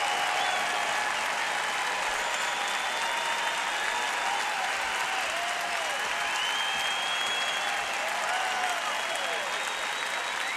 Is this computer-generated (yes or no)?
no